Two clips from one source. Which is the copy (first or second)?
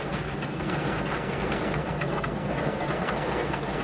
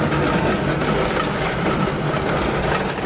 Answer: first